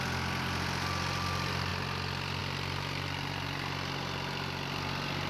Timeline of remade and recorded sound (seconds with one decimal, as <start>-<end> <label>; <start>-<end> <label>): 0.0-5.3 recorded